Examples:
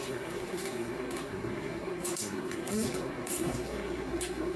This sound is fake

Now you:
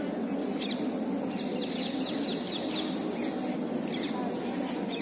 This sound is real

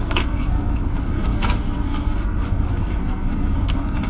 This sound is fake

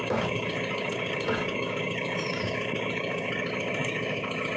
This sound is fake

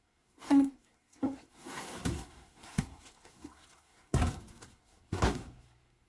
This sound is fake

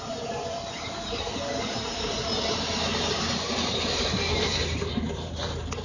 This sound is fake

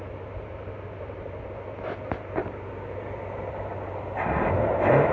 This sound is real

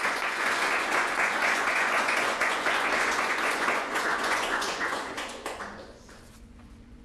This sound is fake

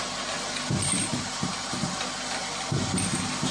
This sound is real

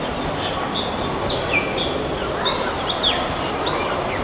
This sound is real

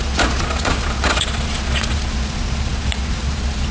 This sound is fake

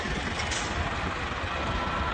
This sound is real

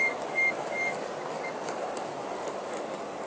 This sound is real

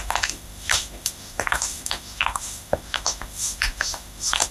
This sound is fake